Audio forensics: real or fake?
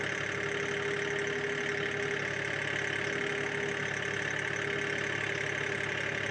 real